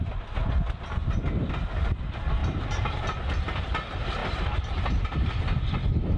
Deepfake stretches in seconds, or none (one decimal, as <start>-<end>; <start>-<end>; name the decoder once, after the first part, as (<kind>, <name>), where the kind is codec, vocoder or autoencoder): 2.4-3.0 (vocoder, BigVGAN v2); 4.2-5.3